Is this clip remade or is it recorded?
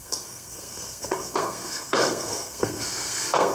remade